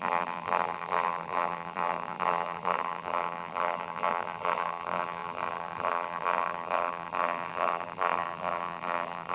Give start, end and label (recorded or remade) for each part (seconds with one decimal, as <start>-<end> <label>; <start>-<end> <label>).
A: 0.0-9.3 remade